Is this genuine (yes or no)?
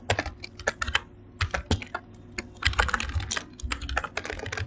yes